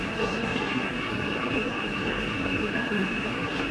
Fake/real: fake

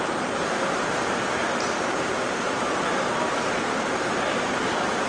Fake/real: fake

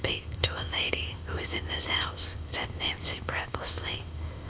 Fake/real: fake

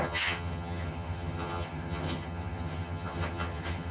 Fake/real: fake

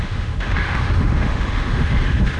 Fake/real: fake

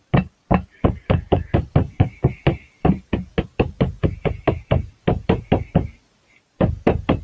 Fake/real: real